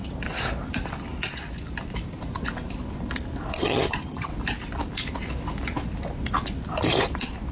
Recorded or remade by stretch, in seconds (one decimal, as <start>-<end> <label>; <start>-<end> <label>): 0.0-3.6 recorded; 3.6-4.3 remade; 4.3-7.5 recorded